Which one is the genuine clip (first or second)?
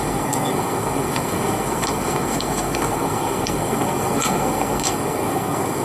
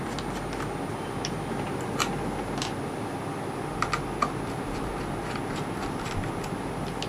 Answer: second